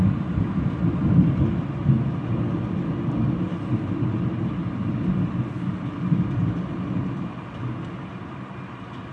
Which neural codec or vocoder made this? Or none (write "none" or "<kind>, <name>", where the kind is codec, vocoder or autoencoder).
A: none